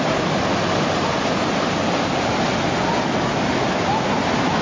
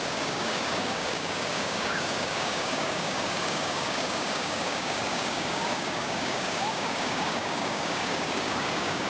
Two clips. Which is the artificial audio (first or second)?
second